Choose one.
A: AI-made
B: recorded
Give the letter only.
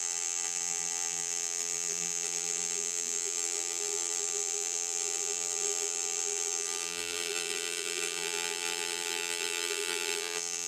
A